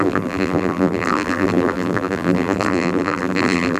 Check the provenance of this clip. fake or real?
fake